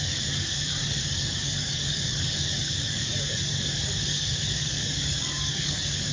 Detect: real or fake fake